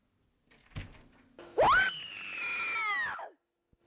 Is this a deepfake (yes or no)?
no